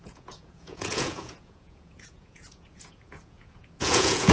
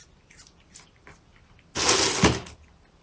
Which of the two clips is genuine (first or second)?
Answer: second